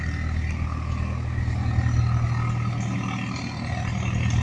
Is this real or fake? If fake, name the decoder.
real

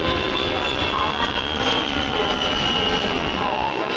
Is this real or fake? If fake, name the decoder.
fake, vocoder, WaveNeXt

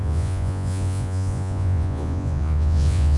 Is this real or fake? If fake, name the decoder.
fake, vocoder, Vocos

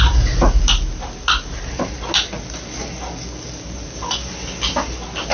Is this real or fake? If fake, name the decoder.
real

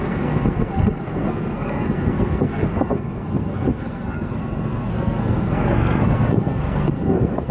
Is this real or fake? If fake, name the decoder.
fake, codec, SNAC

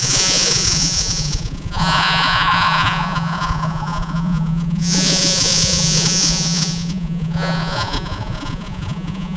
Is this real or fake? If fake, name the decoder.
fake, vocoder, Vocos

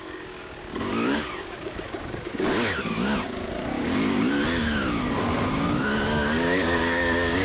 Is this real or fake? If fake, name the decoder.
fake, codec, DAC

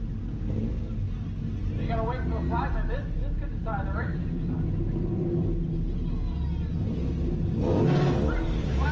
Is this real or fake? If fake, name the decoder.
real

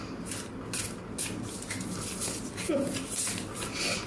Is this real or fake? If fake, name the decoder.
real